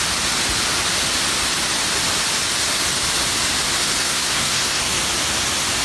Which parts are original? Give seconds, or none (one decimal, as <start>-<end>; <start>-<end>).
0.0-4.0; 4.8-5.8